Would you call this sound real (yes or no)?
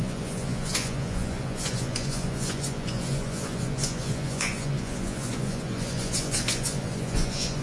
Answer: no